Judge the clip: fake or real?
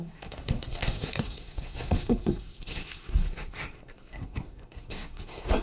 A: fake